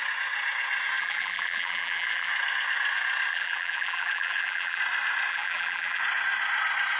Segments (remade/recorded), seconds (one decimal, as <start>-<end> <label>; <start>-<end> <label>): 0.0-1.0 recorded; 1.0-2.3 remade; 2.3-3.3 recorded; 3.3-4.8 remade; 4.8-5.3 recorded; 5.3-6.0 remade; 6.0-7.0 recorded